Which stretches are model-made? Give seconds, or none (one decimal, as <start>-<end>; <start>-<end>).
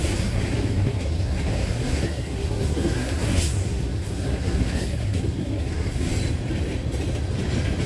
0.0-6.1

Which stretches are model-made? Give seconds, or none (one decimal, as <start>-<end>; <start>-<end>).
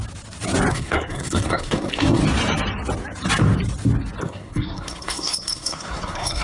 0.7-2.2; 4.2-6.4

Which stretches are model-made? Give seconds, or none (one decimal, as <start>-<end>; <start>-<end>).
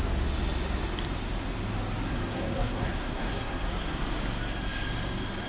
2.1-4.0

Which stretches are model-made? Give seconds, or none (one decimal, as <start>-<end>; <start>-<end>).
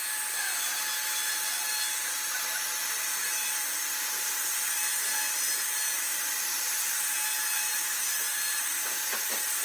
none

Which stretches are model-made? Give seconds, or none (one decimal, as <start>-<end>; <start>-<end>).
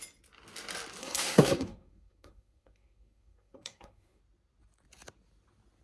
1.0-4.2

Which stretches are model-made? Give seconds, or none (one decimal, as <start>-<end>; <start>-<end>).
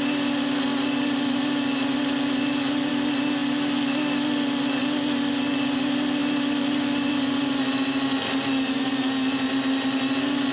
none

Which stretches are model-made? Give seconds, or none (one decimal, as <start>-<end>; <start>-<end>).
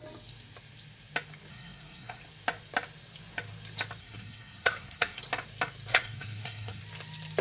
1.5-2.2; 4.0-5.2; 5.9-6.8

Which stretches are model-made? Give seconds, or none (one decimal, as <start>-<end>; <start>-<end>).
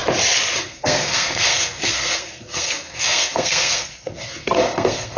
0.6-5.2